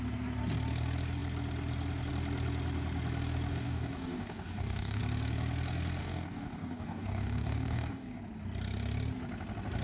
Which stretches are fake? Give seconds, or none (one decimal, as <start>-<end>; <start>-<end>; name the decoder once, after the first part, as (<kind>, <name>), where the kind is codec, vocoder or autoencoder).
3.5-5.0 (codec, DAC); 6.0-8.2